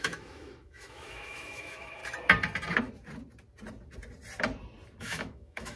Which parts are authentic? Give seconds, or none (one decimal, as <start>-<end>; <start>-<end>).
2.0-5.0